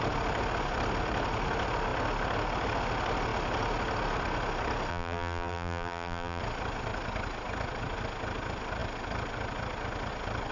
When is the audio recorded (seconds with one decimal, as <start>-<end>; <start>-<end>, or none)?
0.0-4.9; 6.4-10.5